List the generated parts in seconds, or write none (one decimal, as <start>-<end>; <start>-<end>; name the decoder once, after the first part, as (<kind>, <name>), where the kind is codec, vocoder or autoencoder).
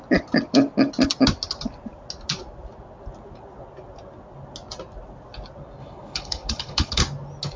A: 5.8-7.0 (codec, HILCodec)